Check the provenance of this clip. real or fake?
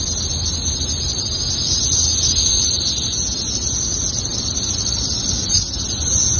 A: real